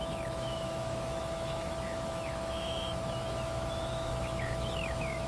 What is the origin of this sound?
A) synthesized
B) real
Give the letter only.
A